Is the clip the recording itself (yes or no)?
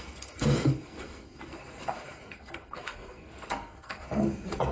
no